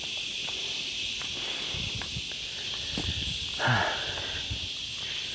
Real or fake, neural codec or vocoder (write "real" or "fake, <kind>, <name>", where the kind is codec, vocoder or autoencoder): real